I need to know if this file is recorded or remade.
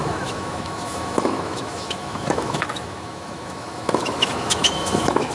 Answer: remade